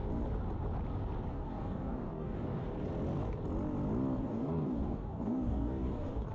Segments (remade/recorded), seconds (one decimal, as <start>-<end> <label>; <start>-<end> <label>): 0.0-1.3 recorded; 1.3-2.6 remade; 2.6-4.2 recorded; 4.2-6.3 remade